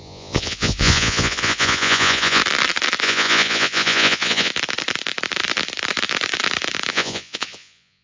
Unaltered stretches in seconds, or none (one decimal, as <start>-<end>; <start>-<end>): 2.4-3.0; 4.5-6.9